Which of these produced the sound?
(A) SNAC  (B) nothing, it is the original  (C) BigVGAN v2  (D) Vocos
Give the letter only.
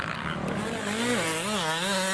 B